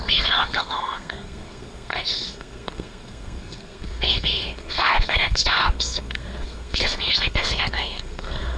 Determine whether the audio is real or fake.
fake